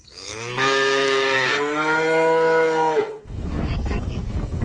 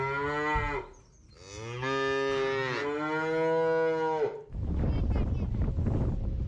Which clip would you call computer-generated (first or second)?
first